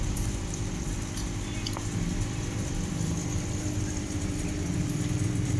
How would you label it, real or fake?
fake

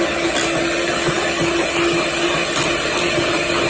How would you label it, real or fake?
real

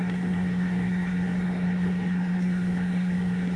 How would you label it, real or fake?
fake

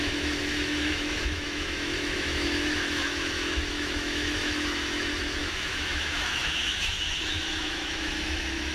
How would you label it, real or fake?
fake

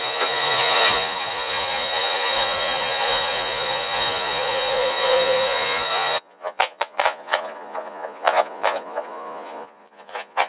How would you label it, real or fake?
fake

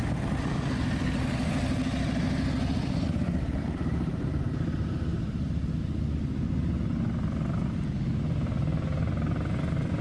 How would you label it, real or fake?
real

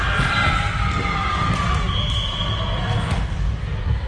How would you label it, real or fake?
real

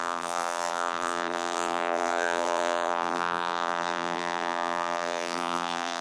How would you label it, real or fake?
fake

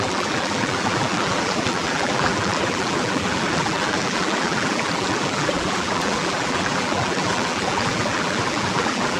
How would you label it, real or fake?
fake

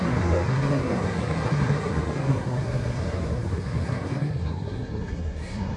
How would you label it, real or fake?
fake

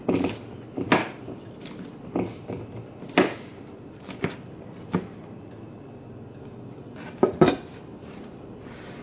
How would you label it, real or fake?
real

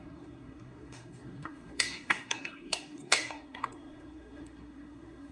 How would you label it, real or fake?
fake